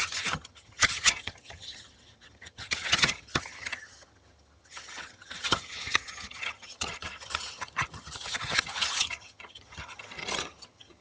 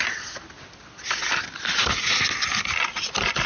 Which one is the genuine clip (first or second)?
second